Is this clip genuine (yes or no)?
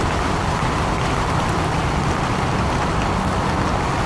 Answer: yes